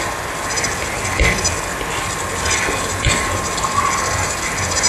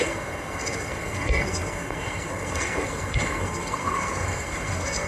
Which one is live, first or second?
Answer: first